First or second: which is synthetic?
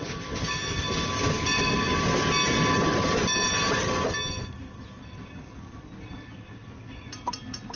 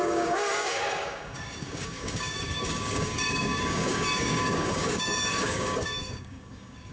second